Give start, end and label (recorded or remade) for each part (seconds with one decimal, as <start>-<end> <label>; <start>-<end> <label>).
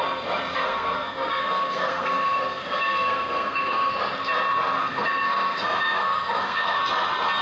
0.0-0.5 recorded; 0.5-3.9 remade; 3.9-4.8 recorded; 4.8-6.8 remade; 6.8-7.4 recorded